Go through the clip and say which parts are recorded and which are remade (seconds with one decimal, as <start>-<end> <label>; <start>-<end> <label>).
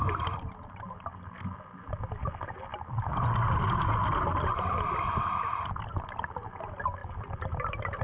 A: 0.0-8.0 recorded